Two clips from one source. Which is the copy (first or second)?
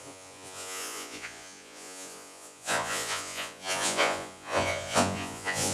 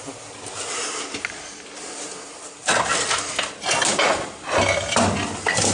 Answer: first